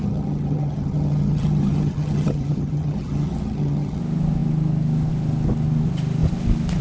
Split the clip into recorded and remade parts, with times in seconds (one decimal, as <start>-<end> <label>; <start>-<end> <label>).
0.0-4.0 remade; 4.0-6.8 recorded